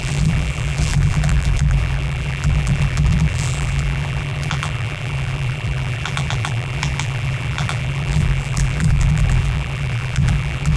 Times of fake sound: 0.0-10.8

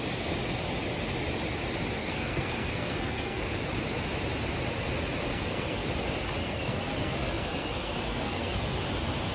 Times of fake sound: 2.0-3.4; 5.3-5.9; 6.4-8.8

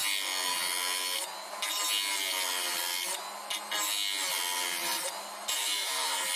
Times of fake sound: 4.8-6.3